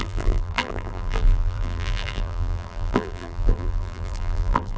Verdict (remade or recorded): remade